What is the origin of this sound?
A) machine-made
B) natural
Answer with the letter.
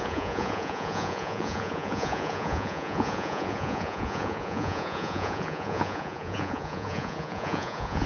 A